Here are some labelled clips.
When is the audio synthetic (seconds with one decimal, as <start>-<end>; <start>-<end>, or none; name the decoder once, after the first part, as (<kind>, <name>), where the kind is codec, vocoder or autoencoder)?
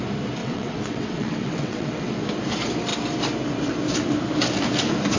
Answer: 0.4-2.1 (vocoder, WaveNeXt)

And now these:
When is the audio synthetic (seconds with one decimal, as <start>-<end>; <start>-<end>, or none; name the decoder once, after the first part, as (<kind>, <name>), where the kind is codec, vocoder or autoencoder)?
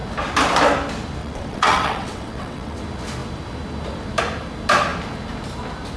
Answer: 1.2-2.8 (vocoder, WaveNeXt)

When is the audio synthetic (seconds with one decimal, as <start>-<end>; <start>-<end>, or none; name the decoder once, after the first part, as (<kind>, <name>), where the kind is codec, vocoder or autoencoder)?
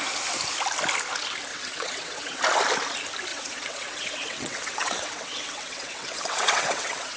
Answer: 1.5-2.4 (vocoder, WaveNeXt); 3.3-7.2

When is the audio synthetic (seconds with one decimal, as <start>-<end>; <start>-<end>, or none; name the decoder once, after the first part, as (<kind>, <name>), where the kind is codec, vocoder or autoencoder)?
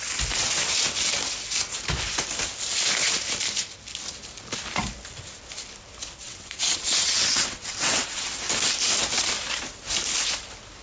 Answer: 6.2-8.3 (vocoder, WaveNeXt)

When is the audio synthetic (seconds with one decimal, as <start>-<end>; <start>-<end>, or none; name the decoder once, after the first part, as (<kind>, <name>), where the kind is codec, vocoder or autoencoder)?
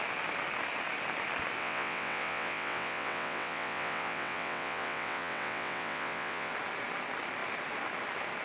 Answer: 1.6-6.5 (vocoder, WaveNeXt)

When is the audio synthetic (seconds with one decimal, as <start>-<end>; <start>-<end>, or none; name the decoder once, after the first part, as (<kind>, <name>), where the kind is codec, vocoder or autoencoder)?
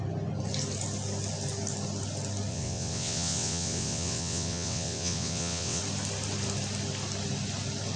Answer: 2.5-5.8 (vocoder, WaveNeXt)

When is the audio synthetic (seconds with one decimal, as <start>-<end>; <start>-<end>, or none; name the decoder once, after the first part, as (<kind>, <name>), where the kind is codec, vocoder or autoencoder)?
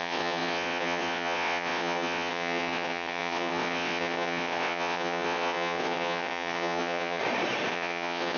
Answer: 0.0-7.2 (vocoder, WaveNeXt); 7.7-8.4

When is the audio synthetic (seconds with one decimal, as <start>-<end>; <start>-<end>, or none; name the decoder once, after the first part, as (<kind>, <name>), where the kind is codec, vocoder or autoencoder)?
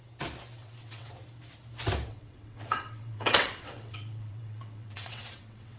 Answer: 0.6-1.1 (vocoder, WaveNeXt); 2.1-5.8